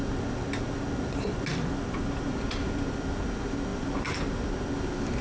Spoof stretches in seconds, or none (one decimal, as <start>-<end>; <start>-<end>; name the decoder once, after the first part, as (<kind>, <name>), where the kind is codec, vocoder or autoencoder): 1.5-3.1 (vocoder, BigVGAN v2); 3.7-4.6